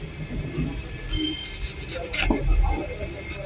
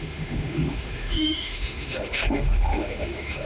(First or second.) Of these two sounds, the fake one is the second